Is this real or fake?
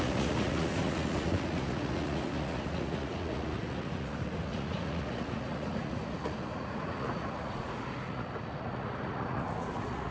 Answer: fake